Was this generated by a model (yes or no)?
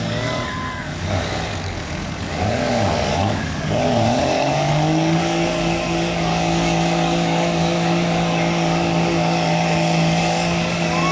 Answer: yes